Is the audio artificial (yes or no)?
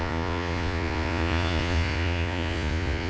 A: yes